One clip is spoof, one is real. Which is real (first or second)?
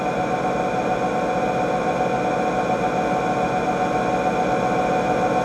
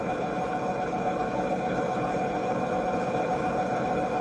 first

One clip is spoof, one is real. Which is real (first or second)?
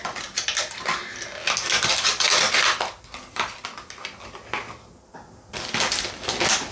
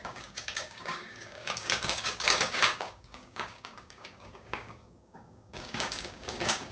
first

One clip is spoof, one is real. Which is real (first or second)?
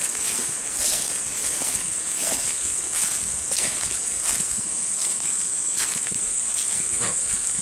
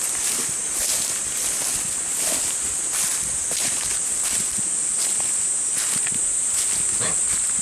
second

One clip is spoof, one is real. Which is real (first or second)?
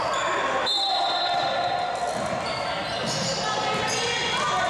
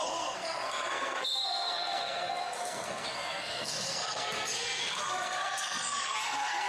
first